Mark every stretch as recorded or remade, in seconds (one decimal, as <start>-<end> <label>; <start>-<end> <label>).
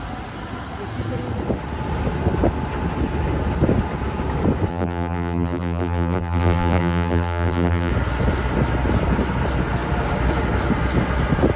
0.0-4.7 recorded; 4.7-7.9 remade; 7.9-11.6 recorded